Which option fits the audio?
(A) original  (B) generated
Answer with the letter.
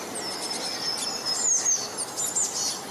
A